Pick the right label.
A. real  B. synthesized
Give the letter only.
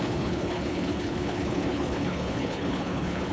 B